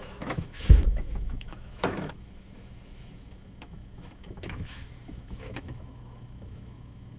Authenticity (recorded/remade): remade